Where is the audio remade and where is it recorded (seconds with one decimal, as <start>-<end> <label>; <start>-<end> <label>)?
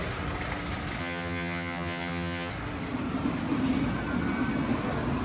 0.0-1.0 recorded; 1.0-2.5 remade; 2.5-5.2 recorded